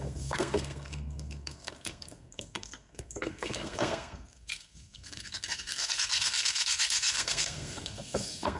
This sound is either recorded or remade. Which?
remade